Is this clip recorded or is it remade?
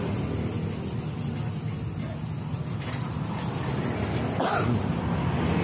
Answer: recorded